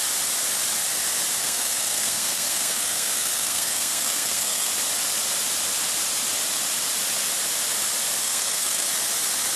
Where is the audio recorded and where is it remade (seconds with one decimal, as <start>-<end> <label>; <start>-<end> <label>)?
0.0-1.4 recorded; 1.4-4.7 remade; 4.7-8.2 recorded; 8.2-8.9 remade; 8.9-9.6 recorded